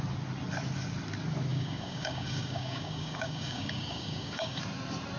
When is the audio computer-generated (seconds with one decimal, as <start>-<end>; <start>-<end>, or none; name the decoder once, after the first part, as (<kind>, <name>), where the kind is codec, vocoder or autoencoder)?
1.5-4.6 (codec, DAC)